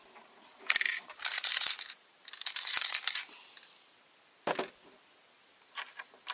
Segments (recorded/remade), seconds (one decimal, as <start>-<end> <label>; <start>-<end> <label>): 0.0-3.8 remade; 3.8-6.3 recorded